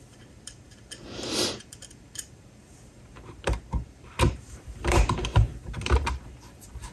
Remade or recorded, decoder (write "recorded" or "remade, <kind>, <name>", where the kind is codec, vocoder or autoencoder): remade, vocoder, BigVGAN v2